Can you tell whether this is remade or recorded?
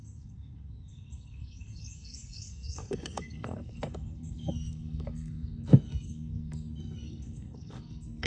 remade